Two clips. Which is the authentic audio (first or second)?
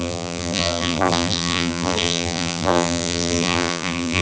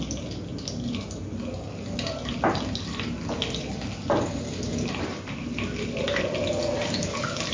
second